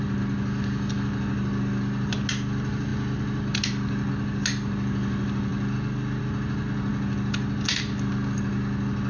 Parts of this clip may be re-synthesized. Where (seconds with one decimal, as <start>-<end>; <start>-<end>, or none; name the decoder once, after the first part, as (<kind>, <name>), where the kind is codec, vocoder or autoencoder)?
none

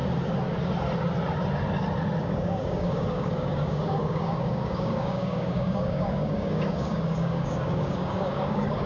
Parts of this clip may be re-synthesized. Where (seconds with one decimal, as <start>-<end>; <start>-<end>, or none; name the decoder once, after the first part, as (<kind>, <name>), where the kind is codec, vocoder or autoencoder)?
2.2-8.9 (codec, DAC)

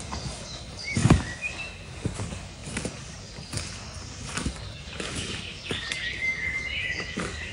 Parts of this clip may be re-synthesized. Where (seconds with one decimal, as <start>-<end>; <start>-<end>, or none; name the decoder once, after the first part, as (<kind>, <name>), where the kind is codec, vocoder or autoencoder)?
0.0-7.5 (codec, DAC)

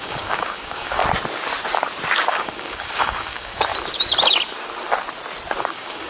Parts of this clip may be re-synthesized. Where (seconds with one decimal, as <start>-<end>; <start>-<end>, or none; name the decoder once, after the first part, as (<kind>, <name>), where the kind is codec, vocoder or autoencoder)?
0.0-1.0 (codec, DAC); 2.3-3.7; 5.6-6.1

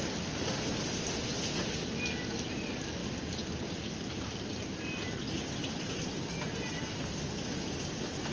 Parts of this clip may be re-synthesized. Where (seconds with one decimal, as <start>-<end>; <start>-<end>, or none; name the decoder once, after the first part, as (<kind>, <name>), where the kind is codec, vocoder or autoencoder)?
none